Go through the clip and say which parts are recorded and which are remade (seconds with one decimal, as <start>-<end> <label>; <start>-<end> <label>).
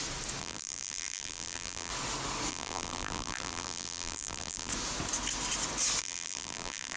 0.0-0.4 recorded; 0.4-1.9 remade; 1.9-2.5 recorded; 2.5-4.7 remade; 4.7-6.0 recorded; 6.0-7.0 remade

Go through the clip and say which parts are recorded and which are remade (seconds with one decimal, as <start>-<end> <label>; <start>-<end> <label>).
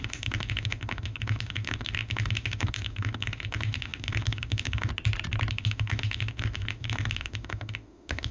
0.0-4.9 remade; 4.9-5.5 recorded; 5.5-8.3 remade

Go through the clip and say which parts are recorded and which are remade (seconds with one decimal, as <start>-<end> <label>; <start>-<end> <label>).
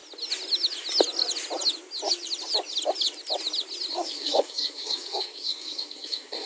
0.0-3.9 recorded; 3.9-6.5 remade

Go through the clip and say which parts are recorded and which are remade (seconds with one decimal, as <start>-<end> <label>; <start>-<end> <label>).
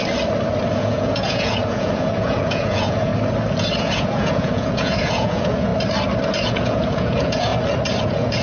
0.0-0.7 recorded; 0.7-3.1 remade; 3.1-3.8 recorded; 3.8-5.7 remade; 5.7-6.5 recorded; 6.5-7.5 remade; 7.5-8.0 recorded; 8.0-8.4 remade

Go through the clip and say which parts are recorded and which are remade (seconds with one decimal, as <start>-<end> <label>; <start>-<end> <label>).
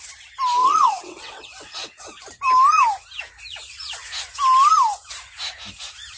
0.0-0.6 recorded; 0.6-2.2 remade; 2.2-6.2 recorded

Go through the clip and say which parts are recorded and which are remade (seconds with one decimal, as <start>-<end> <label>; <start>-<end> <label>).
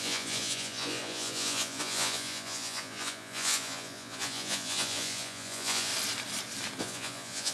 0.0-5.9 remade; 5.9-6.8 recorded; 6.8-7.5 remade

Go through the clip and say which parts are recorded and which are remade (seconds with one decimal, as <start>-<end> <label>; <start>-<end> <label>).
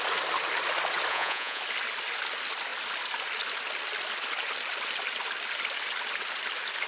0.0-1.1 recorded; 1.1-1.6 remade; 1.6-6.9 recorded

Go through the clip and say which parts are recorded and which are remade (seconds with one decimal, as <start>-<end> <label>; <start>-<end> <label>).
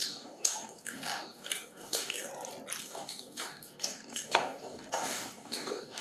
0.0-2.3 remade; 2.3-2.8 recorded; 2.8-6.0 remade